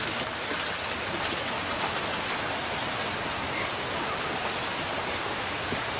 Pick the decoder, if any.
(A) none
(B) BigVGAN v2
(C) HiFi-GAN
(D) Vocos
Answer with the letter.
A